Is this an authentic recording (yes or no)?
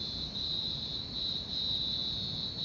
yes